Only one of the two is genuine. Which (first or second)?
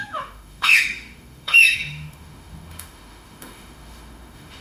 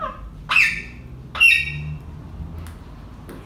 second